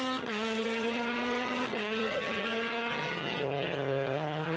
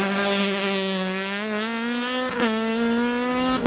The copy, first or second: first